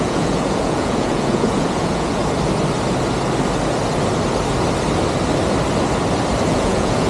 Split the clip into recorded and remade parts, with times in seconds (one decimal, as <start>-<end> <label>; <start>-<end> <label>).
0.0-2.2 remade; 2.2-6.5 recorded; 6.5-7.1 remade